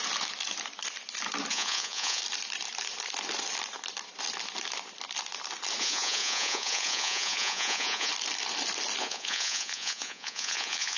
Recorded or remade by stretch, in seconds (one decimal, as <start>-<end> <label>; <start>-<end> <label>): 0.0-1.5 recorded; 1.5-2.2 remade; 2.2-5.8 recorded; 5.8-8.1 remade; 8.1-9.0 recorded; 9.0-11.0 remade